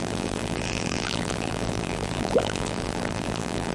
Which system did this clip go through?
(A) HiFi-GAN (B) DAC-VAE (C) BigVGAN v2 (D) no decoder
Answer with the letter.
C